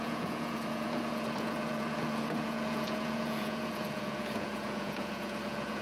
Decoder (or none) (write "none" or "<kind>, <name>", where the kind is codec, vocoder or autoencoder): vocoder, Vocos